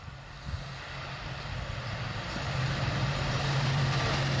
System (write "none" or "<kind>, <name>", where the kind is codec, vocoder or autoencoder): vocoder, BigVGAN v2